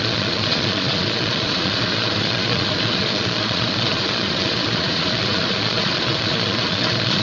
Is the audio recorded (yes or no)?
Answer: no